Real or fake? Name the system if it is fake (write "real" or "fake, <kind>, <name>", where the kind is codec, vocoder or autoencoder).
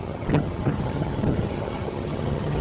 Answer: fake, vocoder, HiFi-GAN